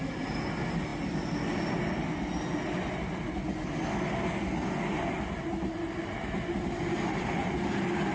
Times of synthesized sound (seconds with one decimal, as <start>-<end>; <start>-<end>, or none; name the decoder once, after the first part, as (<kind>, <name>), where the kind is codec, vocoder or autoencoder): none